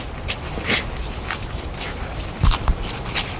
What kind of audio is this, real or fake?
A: real